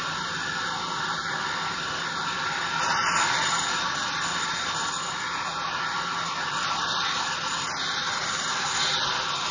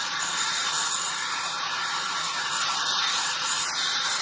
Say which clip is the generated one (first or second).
second